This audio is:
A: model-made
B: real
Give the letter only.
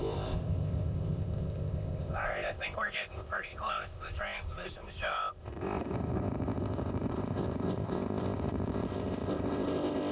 A